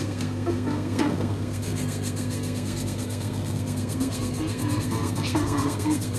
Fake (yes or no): yes